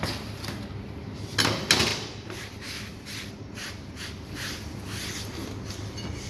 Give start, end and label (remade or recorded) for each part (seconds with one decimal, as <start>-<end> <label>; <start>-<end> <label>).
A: 0.0-2.9 recorded; 2.9-3.9 remade; 3.9-6.3 recorded